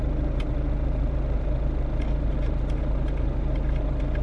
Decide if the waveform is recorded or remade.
remade